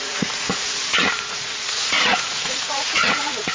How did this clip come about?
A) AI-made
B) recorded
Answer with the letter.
A